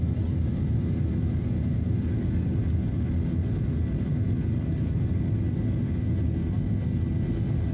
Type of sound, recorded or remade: recorded